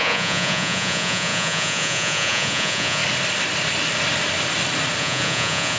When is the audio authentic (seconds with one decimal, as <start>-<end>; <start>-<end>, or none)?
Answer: 3.0-5.0